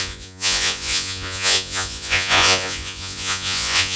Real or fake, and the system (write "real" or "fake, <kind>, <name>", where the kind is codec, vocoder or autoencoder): fake, vocoder, Vocos